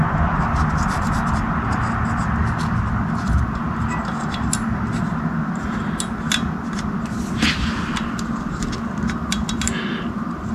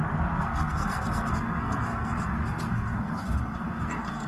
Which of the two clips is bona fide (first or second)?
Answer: first